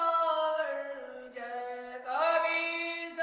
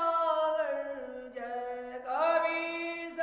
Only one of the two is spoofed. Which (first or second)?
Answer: first